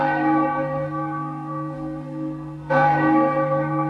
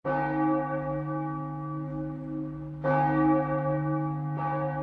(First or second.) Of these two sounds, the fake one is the first